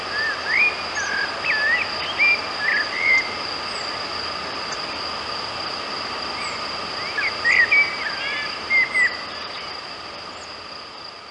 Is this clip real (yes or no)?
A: yes